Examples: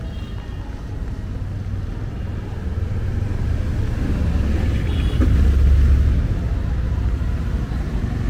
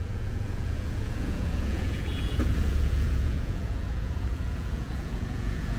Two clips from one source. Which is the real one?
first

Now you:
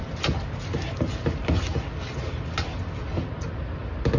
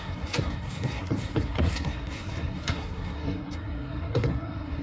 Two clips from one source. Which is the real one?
first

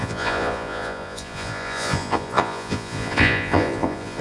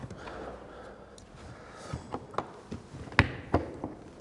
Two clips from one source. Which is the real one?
second